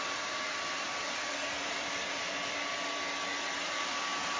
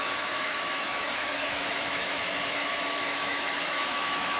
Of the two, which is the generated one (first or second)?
second